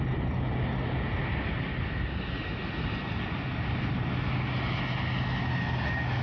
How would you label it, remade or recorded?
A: recorded